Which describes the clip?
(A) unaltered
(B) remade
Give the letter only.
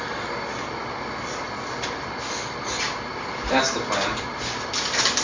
A